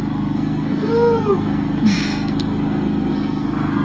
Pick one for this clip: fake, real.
fake